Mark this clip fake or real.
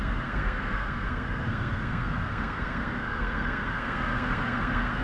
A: fake